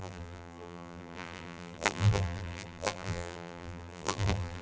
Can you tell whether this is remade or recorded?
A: remade